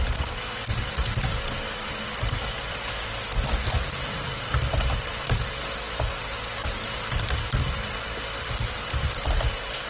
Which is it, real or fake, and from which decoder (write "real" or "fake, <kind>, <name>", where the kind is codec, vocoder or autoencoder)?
real